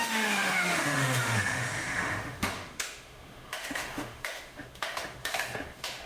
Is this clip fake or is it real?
fake